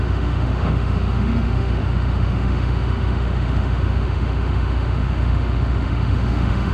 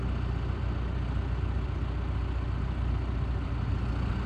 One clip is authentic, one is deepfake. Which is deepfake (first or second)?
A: first